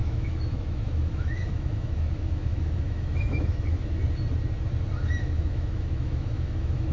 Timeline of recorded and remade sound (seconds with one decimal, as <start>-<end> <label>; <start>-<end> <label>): 0.0-4.0 remade; 4.0-5.2 recorded; 5.2-6.9 remade

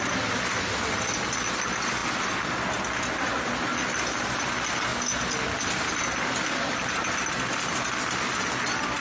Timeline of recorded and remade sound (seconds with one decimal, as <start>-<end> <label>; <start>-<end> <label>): 0.0-9.0 recorded

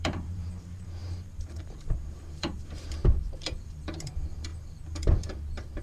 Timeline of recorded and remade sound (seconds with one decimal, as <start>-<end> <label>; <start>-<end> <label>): 0.0-5.8 remade

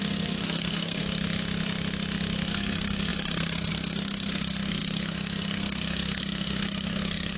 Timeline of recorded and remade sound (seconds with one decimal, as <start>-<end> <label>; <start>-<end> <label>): 0.0-1.0 remade; 1.0-2.5 recorded; 2.5-7.4 remade

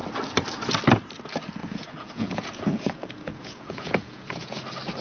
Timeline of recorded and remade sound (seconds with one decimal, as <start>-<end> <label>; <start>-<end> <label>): 0.0-1.6 recorded; 1.6-4.6 remade; 4.6-5.0 recorded

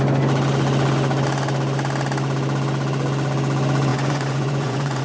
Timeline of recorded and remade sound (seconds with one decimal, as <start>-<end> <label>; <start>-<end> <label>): 0.0-3.9 recorded; 3.9-5.0 remade

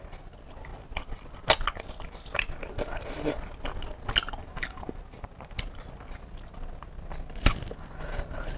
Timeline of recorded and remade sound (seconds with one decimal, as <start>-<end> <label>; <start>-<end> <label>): 0.0-4.4 recorded; 4.4-5.0 remade; 5.0-8.6 recorded